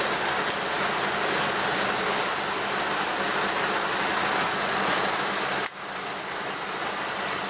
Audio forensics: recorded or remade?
recorded